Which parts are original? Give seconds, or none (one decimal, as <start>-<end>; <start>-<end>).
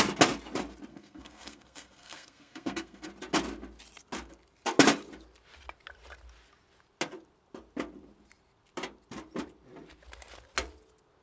0.0-0.9; 3.1-11.2